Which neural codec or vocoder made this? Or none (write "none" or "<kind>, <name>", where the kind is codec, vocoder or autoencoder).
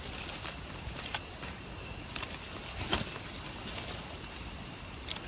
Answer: none